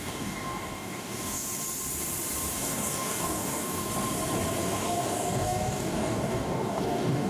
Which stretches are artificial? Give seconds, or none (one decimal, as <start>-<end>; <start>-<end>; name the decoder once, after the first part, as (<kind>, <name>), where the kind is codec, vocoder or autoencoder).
0.0-1.6 (codec, DAC); 2.5-3.9; 4.6-7.3